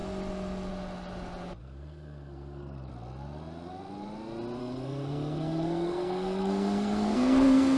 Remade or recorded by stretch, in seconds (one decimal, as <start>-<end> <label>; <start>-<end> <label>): 0.0-1.6 recorded; 1.6-2.9 remade; 2.9-4.6 recorded; 4.6-7.8 remade